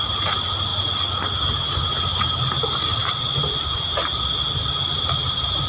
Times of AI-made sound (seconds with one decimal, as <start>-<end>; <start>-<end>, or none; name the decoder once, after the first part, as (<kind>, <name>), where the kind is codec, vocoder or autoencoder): none